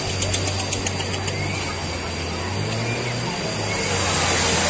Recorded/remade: recorded